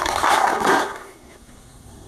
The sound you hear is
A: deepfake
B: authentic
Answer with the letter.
A